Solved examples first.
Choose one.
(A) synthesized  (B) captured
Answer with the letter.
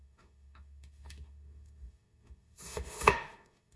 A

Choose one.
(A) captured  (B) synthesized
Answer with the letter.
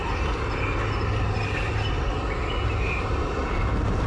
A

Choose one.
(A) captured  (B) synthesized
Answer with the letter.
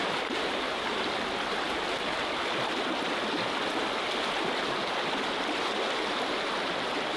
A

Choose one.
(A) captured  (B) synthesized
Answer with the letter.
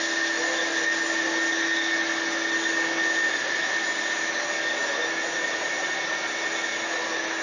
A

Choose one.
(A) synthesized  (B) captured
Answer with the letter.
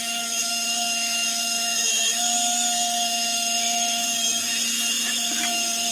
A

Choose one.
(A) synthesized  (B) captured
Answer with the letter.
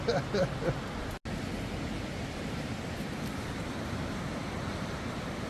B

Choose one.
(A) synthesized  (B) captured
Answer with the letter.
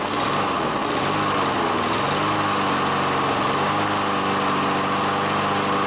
B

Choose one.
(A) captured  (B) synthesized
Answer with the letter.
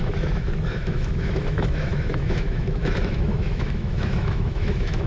B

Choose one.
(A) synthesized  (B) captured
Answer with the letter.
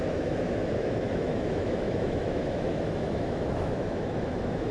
A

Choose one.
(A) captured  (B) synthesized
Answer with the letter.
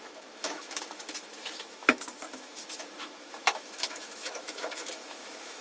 B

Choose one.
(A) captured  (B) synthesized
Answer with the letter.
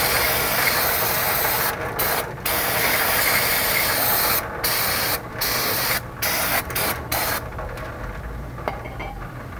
A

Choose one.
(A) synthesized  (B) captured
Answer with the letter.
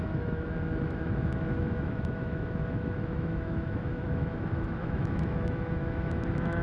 A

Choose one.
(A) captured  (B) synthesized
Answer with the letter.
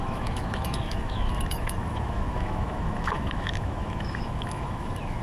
B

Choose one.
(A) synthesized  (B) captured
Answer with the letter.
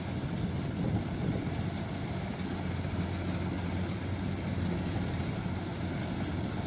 B